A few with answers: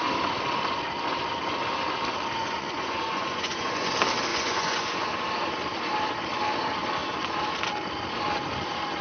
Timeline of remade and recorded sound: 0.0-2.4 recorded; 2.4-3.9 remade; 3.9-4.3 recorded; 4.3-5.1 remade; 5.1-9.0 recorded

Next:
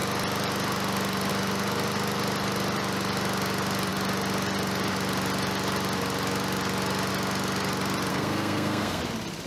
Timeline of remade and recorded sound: 0.0-8.1 recorded; 8.1-9.0 remade; 9.0-9.5 recorded

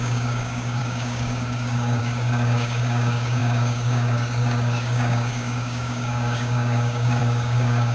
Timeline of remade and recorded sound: 0.0-7.9 remade

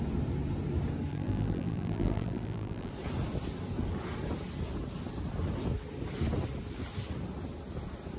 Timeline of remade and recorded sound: 0.0-1.1 recorded; 1.1-2.9 remade; 2.9-8.2 recorded

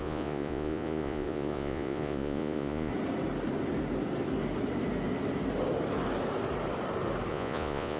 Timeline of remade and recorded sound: 0.0-2.9 remade; 2.9-7.3 recorded; 7.3-8.0 remade

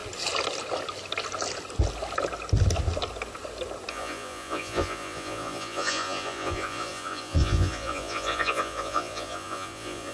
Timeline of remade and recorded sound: 0.0-3.9 recorded; 3.9-10.1 remade

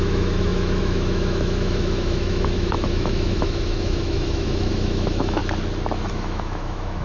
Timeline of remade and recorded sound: 0.0-5.4 remade; 5.4-6.1 recorded; 6.1-7.0 remade

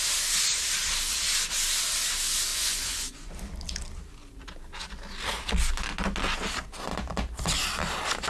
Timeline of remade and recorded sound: 0.0-2.5 recorded; 2.5-3.3 remade; 3.3-8.3 recorded